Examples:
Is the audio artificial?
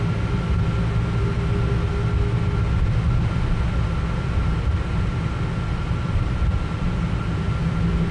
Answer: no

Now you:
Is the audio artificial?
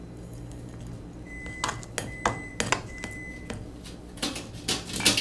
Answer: no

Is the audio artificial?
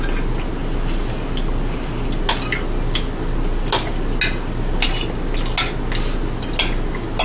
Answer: no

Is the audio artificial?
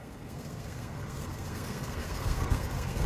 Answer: yes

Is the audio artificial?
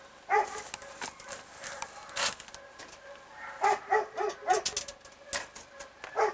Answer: no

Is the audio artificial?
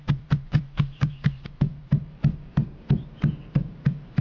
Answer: yes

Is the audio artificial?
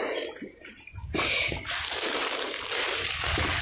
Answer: no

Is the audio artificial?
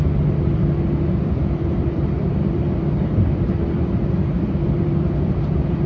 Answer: yes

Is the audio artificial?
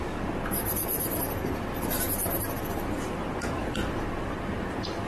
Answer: no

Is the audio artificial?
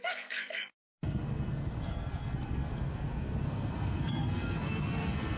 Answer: yes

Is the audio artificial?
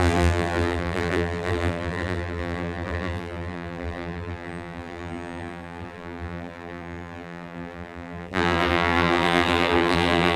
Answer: yes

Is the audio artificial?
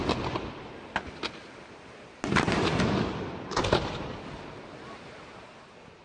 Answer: no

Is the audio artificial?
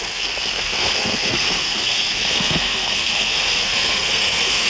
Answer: yes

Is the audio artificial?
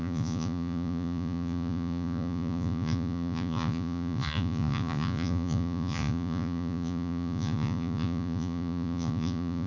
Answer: yes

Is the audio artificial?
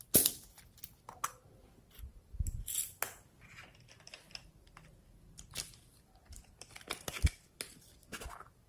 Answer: no